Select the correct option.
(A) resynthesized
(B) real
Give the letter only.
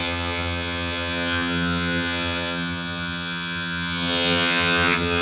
A